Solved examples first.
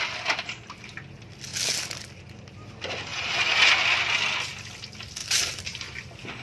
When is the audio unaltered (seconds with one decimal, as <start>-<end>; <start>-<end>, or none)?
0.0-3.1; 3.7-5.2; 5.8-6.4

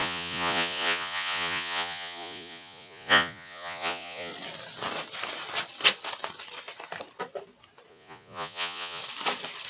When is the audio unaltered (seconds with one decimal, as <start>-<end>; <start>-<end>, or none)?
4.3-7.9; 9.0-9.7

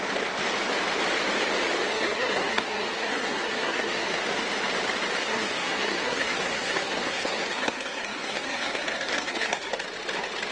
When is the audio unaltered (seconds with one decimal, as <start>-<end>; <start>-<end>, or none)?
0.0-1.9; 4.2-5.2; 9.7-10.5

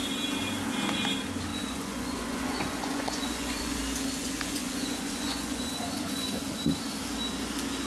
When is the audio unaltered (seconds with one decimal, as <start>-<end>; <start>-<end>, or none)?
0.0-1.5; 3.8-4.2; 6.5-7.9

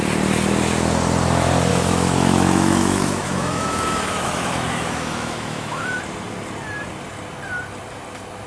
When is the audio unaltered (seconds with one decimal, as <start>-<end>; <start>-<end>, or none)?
0.0-1.7; 6.0-8.5

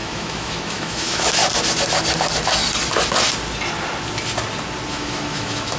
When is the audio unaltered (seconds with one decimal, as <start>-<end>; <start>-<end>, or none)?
1.4-4.9

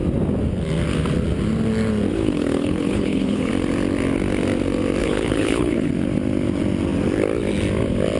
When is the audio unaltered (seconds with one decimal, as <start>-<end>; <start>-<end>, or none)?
0.0-2.1; 3.5-5.0; 5.9-8.2